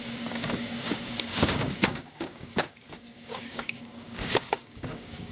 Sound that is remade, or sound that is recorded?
remade